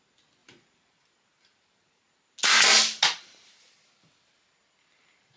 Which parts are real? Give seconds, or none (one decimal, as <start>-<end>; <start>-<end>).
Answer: 0.0-0.4; 3.6-5.4